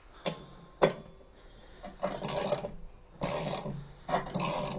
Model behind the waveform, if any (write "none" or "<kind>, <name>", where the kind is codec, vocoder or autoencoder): none